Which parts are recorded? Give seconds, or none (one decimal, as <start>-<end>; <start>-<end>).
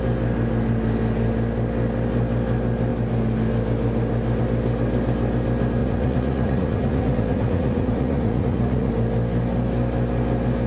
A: 0.0-5.8; 8.9-10.7